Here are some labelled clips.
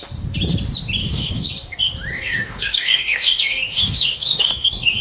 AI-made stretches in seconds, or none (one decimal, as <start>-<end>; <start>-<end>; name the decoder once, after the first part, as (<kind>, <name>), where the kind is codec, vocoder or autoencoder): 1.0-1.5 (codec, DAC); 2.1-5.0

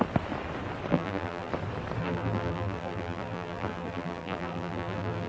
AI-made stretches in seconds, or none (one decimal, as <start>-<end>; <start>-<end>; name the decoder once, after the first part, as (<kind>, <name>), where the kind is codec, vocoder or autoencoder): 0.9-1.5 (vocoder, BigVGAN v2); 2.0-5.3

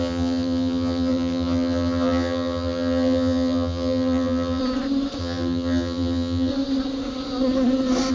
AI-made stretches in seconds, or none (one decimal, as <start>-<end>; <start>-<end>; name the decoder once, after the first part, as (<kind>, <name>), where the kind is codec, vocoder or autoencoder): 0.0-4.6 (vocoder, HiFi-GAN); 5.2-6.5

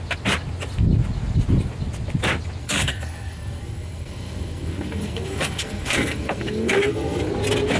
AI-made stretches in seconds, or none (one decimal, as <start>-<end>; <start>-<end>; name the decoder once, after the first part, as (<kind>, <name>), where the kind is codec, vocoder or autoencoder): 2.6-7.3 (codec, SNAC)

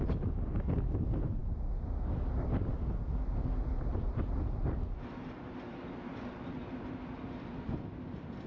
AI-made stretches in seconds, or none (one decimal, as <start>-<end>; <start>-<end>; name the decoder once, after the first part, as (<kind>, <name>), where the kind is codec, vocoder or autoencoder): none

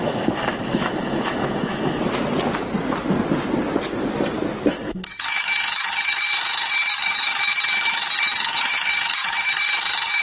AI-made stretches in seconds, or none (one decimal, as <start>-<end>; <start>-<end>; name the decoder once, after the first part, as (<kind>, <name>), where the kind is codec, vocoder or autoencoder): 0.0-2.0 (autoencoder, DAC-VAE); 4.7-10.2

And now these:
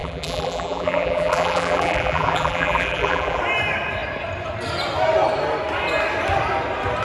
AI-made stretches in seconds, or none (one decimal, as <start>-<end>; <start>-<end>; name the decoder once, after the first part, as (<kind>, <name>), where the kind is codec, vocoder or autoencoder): 0.0-3.4 (vocoder, BigVGAN v2)

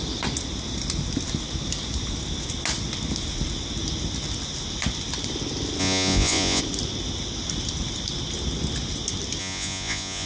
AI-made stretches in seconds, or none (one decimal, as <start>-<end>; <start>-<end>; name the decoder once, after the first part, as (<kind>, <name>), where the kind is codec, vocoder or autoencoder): 5.8-6.6 (vocoder, Vocos); 9.4-10.3